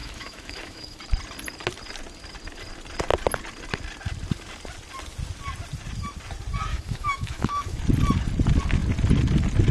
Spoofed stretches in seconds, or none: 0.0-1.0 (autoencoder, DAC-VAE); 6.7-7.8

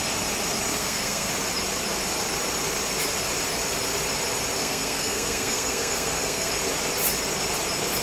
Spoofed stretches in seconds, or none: 0.7-1.3 (codec, SNAC); 4.6-6.5

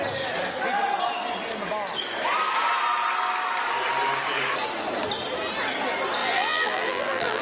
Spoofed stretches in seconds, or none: 6.2-7.4 (vocoder, BigVGAN v2)

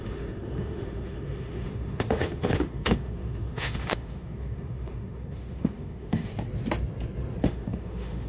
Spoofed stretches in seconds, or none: 0.0-6.3 (autoencoder, DAC-VAE); 7.4-8.3